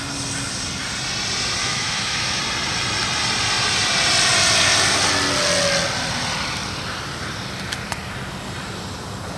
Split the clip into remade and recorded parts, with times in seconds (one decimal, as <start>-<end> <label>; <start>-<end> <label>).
0.0-1.6 recorded; 1.6-2.4 remade; 2.4-9.4 recorded